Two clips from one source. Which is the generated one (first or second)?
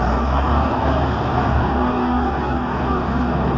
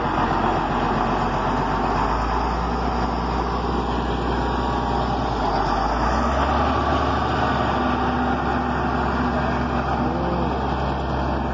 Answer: first